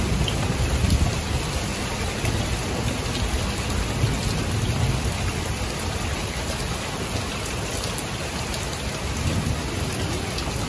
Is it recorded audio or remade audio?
recorded